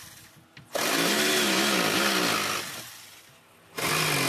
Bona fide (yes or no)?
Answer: yes